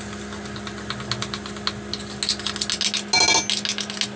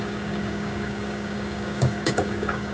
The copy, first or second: second